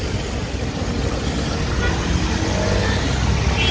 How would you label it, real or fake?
real